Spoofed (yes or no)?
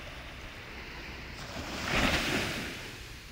no